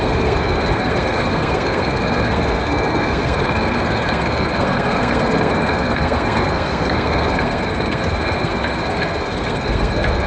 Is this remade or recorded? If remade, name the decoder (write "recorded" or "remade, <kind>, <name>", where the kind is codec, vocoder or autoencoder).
remade, codec, SNAC